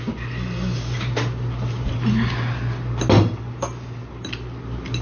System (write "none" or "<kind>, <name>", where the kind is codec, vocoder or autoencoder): none